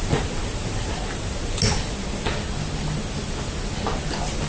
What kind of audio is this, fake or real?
real